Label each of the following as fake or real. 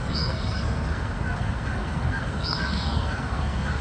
fake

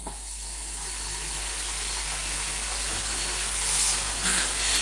fake